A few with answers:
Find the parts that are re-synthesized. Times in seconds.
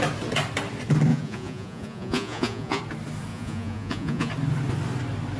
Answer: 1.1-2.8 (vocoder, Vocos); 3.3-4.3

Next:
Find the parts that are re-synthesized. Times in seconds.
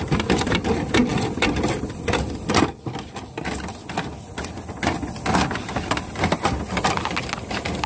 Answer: none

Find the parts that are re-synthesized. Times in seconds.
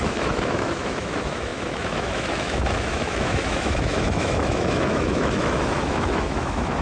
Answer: 0.0-6.8 (autoencoder, DAC-VAE)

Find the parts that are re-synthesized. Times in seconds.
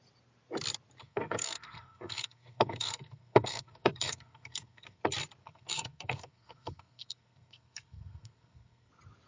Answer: 1.0-5.0 (codec, SNAC); 5.4-8.9